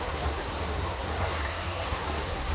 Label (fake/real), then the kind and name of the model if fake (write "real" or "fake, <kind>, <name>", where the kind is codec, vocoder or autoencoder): fake, codec, SNAC